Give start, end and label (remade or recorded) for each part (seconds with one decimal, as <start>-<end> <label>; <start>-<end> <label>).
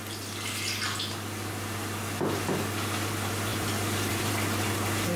0.0-3.5 recorded; 3.5-4.3 remade; 4.3-5.2 recorded